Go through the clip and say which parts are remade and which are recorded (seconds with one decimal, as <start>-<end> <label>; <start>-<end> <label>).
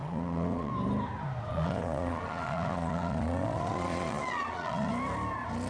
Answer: 0.0-0.7 remade; 0.7-1.5 recorded; 1.5-4.9 remade; 4.9-5.7 recorded